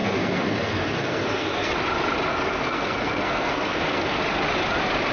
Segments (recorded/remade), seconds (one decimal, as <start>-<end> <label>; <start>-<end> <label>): 0.0-1.7 remade; 1.7-2.3 recorded; 2.3-4.2 remade; 4.2-5.1 recorded